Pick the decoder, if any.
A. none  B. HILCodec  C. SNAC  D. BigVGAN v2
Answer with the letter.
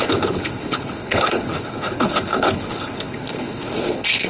B